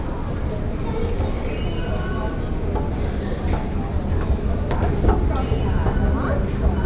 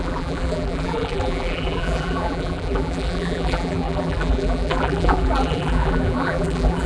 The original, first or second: first